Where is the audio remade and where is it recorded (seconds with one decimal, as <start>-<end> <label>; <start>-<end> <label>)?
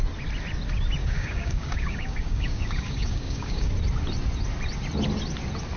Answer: 0.0-1.0 recorded; 1.0-3.7 remade; 3.7-5.8 recorded